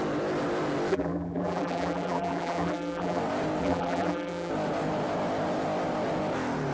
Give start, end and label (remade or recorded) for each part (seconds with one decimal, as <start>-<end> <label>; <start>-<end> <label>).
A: 0.0-0.9 recorded; 0.9-3.2 remade; 3.2-3.6 recorded; 3.6-4.5 remade; 4.5-6.7 recorded